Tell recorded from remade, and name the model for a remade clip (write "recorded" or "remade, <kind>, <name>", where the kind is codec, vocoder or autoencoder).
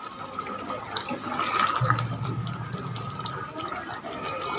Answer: recorded